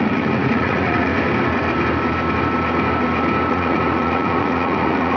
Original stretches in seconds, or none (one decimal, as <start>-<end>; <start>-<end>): 1.1-3.5

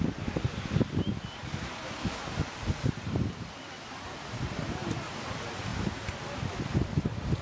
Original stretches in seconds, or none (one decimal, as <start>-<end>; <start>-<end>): 0.0-1.4; 2.7-7.4

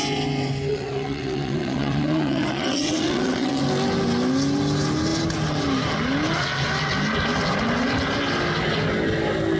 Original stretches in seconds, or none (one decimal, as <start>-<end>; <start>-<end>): 0.0-0.7; 3.6-9.6

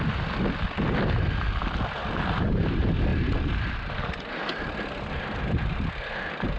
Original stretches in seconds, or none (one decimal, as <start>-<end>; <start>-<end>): 0.0-6.6

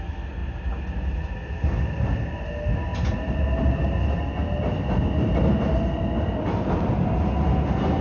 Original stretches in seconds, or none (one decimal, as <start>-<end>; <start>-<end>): 0.0-8.0

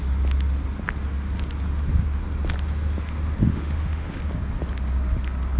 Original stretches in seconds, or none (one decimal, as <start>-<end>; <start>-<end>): 0.0-3.4; 4.2-5.6